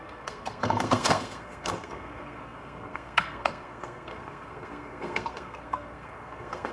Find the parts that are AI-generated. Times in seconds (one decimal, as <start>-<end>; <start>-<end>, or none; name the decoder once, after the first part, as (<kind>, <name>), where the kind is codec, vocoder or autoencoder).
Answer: 0.0-6.7 (codec, SNAC)